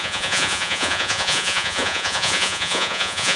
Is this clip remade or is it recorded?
remade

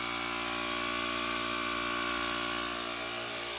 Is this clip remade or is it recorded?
recorded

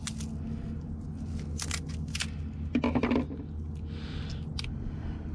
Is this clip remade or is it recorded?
recorded